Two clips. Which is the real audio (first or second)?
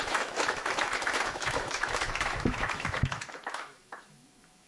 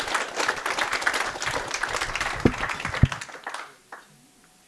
second